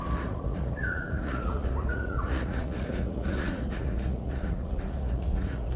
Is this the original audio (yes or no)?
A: no